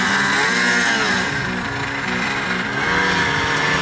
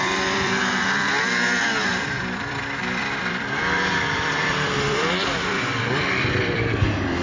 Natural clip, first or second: first